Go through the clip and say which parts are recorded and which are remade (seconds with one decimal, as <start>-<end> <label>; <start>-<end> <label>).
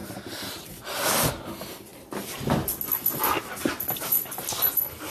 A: 0.0-1.3 remade; 1.3-5.1 recorded